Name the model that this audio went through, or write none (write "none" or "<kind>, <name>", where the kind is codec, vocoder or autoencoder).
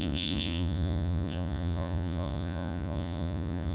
vocoder, Vocos